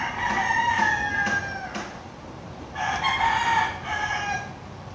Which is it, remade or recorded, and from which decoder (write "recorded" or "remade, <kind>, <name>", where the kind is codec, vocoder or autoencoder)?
recorded